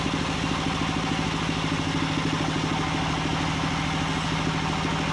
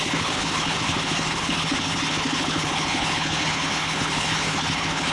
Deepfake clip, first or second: second